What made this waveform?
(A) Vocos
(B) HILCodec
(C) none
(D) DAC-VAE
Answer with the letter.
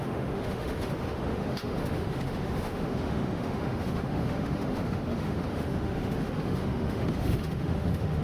D